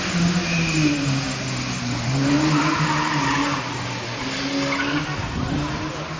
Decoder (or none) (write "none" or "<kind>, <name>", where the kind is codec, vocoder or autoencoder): none